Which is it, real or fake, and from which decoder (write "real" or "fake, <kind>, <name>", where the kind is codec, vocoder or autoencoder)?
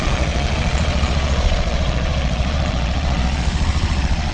fake, vocoder, Vocos